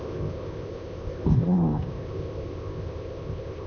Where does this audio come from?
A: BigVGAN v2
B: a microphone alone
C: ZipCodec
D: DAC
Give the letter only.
C